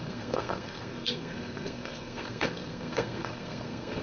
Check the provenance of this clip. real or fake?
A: fake